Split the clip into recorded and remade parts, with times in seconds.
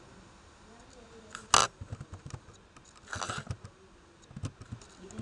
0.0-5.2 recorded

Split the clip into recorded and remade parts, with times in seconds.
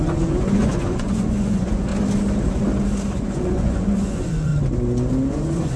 0.0-1.9 remade; 1.9-3.1 recorded; 3.1-4.5 remade; 4.5-5.3 recorded; 5.3-5.8 remade